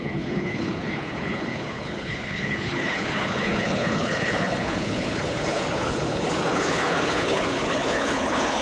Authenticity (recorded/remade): remade